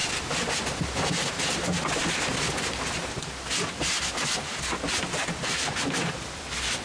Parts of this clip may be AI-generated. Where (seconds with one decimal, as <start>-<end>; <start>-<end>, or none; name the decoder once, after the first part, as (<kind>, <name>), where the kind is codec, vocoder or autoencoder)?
none